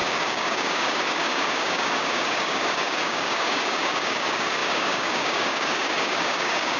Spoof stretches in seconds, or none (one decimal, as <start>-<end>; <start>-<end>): 0.0-6.8